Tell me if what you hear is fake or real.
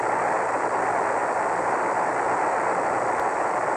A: real